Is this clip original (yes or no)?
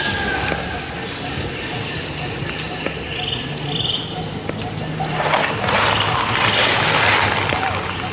yes